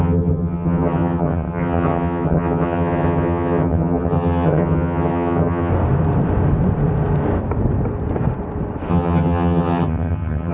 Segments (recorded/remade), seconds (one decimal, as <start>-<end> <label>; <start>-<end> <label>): 0.0-5.7 remade; 5.7-8.9 recorded; 8.9-10.5 remade